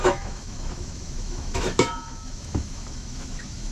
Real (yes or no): no